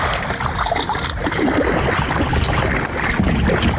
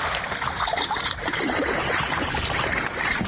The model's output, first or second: second